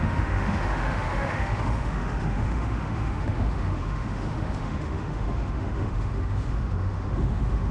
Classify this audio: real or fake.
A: fake